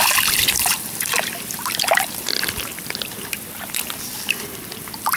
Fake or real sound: real